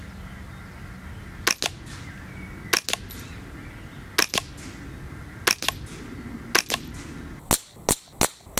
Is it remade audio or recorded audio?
recorded